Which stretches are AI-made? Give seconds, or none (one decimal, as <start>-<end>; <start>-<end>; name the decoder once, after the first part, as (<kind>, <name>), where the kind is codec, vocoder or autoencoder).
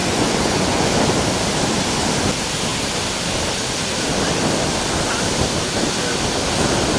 0.0-0.9 (vocoder, Vocos)